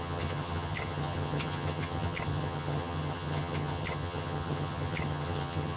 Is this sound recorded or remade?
remade